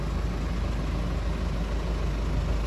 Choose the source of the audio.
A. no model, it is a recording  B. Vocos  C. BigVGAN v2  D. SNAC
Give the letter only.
A